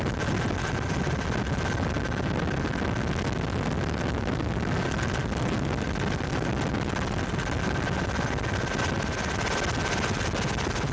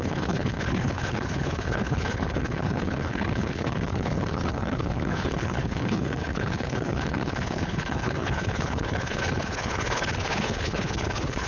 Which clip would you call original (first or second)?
first